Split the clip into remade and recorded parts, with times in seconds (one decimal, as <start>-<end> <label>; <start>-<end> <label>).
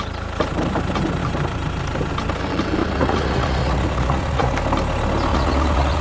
0.0-2.8 recorded; 2.8-4.5 remade; 4.5-5.3 recorded; 5.3-6.0 remade